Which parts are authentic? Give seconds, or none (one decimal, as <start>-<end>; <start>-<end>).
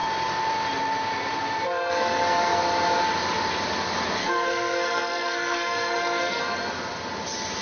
0.0-1.9; 2.6-4.2; 6.4-7.6